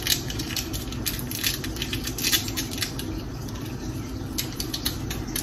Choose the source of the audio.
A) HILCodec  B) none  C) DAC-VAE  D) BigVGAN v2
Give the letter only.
B